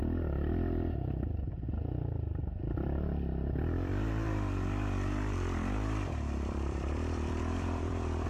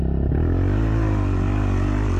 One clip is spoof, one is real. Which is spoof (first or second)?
first